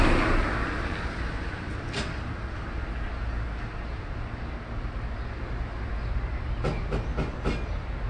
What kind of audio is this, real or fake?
real